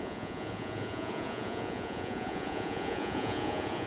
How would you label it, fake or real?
fake